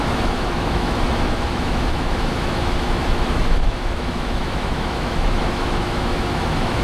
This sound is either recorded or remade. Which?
remade